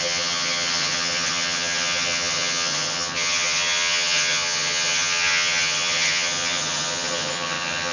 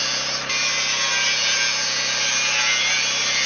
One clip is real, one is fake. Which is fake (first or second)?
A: first